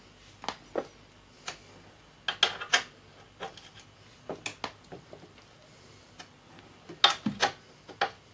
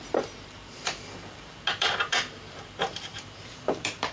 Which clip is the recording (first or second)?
first